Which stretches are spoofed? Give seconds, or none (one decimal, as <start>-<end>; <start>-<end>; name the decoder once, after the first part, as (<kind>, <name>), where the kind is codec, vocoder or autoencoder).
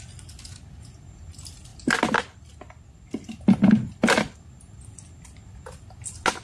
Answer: none